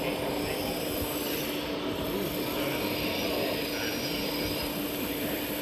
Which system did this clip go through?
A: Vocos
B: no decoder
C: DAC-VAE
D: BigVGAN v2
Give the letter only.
B